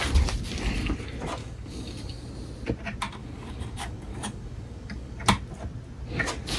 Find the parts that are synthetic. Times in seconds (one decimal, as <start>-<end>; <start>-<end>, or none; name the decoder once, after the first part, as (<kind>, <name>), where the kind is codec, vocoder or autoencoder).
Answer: 1.4-2.3 (codec, DAC); 3.2-5.3